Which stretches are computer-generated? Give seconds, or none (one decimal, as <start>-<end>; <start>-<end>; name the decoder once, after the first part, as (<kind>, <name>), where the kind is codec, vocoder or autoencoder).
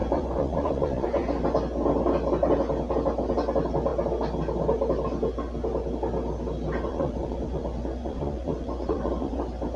0.0-1.3 (vocoder, Vocos); 6.9-9.4